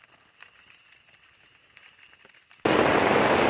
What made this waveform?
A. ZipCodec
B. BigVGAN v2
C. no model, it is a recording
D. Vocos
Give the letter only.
C